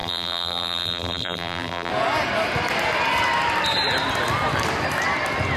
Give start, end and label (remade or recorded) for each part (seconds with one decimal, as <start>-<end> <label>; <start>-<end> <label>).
0.0-1.9 remade; 1.9-5.6 recorded